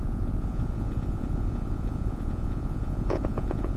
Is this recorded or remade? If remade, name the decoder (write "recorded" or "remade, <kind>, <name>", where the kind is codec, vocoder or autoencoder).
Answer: remade, vocoder, Vocos